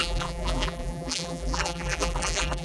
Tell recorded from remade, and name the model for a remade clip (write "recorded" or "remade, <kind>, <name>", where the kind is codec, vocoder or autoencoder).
remade, vocoder, BigVGAN v2